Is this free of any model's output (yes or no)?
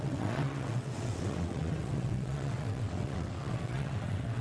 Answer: no